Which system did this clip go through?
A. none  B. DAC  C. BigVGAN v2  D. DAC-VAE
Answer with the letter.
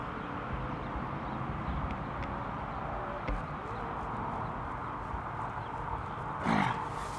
A